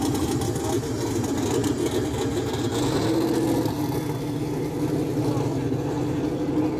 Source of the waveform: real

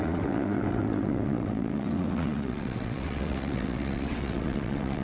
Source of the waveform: fake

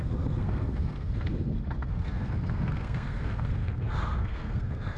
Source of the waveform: fake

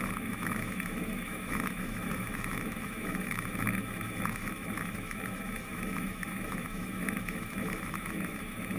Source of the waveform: fake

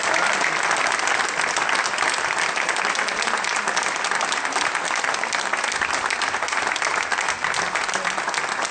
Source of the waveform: real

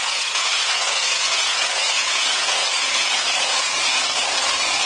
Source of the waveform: fake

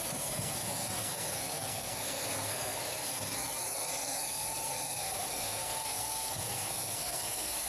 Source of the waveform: fake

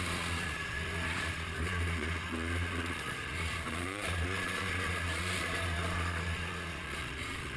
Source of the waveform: fake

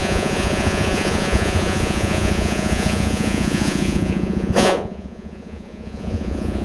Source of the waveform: fake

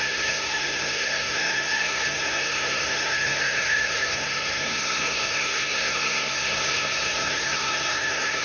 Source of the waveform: fake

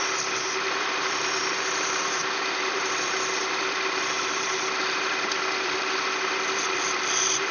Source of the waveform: fake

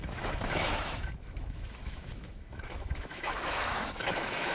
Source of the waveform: fake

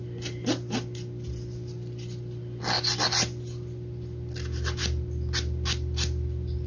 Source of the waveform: real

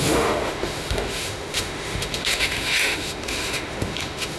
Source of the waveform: fake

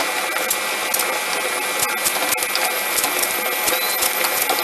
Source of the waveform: real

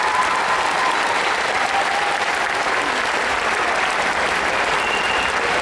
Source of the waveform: real